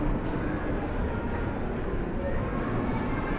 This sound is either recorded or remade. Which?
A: recorded